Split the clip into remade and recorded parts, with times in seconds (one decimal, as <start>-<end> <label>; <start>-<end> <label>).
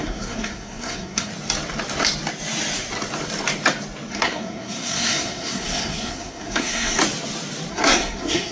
0.0-1.3 remade; 1.3-4.1 recorded; 4.1-7.0 remade; 7.0-7.7 recorded; 7.7-8.5 remade